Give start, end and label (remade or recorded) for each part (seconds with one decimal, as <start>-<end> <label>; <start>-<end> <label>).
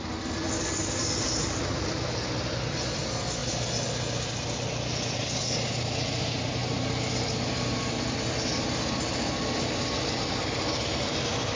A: 0.0-11.6 recorded